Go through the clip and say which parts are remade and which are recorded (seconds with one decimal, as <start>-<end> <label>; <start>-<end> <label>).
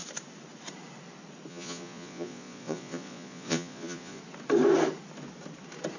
0.0-1.5 recorded; 1.5-4.2 remade; 4.2-6.0 recorded